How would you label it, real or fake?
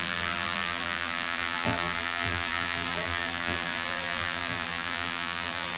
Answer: fake